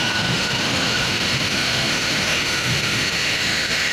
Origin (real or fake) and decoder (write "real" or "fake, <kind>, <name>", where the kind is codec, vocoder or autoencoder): fake, autoencoder, DAC-VAE